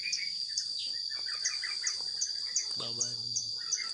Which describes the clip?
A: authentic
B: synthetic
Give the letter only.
B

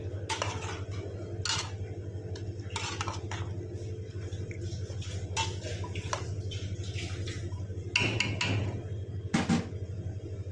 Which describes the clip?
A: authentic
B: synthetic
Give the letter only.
A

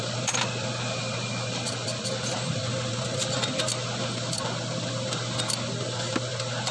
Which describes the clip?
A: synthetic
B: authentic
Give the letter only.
B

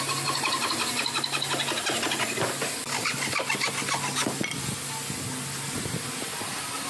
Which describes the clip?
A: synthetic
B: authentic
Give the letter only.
B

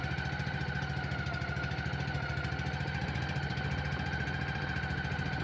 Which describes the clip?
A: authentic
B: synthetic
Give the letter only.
A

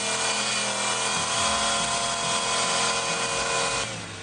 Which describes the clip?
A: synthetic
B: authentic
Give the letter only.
B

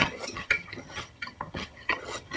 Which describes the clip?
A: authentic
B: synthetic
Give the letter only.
B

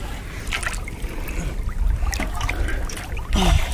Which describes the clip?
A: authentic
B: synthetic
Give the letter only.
A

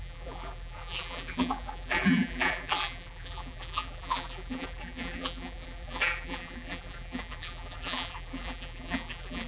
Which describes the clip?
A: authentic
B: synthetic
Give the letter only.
B